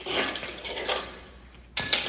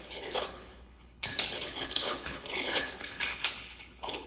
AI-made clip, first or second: second